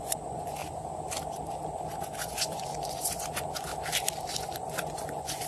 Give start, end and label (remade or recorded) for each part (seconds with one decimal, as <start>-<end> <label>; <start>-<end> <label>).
0.0-0.6 remade; 0.6-2.0 recorded; 2.0-3.7 remade; 3.7-4.3 recorded; 4.3-5.5 remade